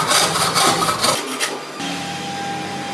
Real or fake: real